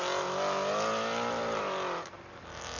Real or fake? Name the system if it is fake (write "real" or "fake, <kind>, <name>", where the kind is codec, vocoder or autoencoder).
real